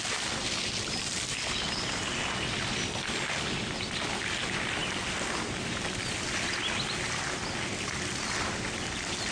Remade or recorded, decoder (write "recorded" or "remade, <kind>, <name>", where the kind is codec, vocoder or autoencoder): recorded